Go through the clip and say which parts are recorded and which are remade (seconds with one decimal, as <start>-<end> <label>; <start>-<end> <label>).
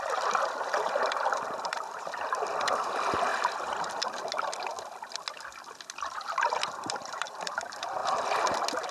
0.0-3.3 remade; 3.3-6.9 recorded; 6.9-8.0 remade; 8.0-8.9 recorded